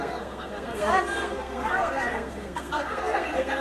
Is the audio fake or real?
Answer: fake